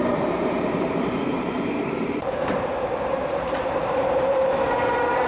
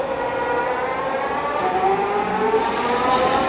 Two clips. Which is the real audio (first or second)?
second